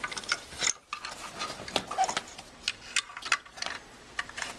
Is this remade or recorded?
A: recorded